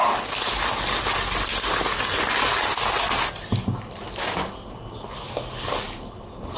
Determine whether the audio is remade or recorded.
recorded